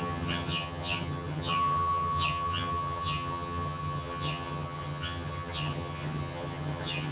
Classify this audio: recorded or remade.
remade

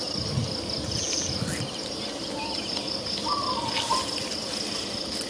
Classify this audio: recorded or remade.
recorded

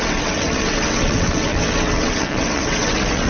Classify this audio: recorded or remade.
remade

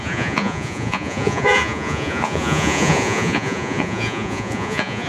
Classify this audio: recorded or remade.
remade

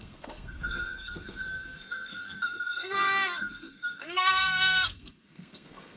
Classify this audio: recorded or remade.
remade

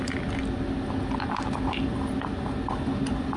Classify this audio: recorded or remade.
recorded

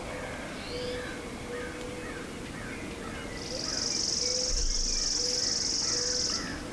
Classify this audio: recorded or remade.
recorded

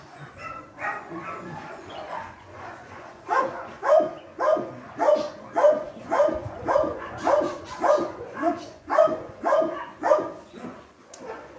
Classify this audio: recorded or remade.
remade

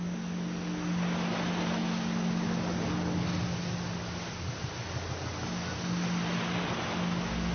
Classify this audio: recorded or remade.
recorded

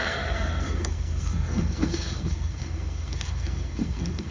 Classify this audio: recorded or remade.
remade